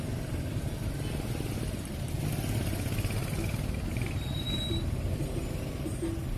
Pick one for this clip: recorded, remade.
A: recorded